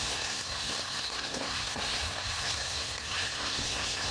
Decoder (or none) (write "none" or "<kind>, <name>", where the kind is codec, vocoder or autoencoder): codec, SNAC